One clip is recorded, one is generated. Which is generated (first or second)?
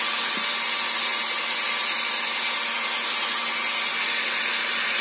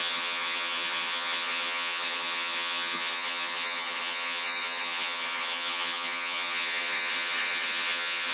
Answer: second